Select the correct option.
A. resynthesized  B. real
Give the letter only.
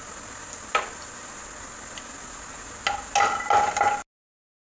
B